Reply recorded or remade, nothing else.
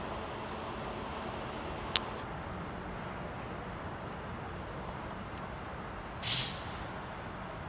recorded